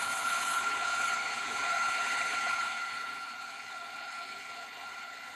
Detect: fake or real fake